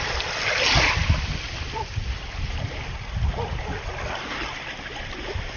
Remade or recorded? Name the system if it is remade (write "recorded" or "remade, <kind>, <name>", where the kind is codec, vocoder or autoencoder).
recorded